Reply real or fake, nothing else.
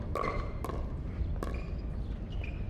real